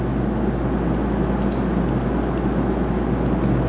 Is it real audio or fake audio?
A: real